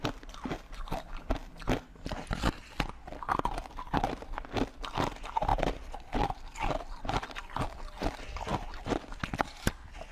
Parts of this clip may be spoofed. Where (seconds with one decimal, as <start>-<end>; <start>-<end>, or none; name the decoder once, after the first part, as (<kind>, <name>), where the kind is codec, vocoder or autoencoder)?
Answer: none